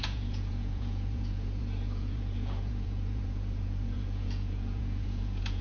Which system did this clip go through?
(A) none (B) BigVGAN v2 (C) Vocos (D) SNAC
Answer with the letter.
C